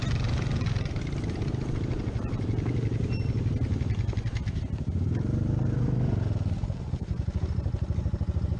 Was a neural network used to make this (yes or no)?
no